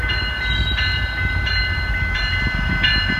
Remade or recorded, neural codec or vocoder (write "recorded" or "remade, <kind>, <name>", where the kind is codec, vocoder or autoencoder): recorded